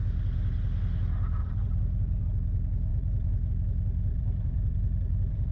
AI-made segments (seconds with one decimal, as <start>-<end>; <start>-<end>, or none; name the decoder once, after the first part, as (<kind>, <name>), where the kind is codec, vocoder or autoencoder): 1.4-2.2 (vocoder, BigVGAN v2); 2.9-3.5; 4.1-5.5